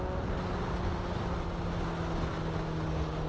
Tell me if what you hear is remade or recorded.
recorded